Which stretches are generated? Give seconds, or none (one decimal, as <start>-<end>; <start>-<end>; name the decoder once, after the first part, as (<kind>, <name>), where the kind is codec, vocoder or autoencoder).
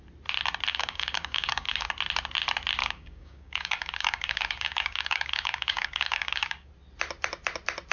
0.7-1.9 (codec, DAC); 2.8-6.7